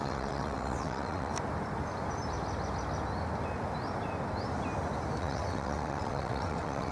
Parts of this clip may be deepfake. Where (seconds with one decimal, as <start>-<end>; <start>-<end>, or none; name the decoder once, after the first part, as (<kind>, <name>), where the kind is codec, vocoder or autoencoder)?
0.0-1.3 (vocoder, WaveNeXt); 5.2-6.9